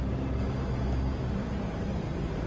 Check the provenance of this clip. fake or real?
real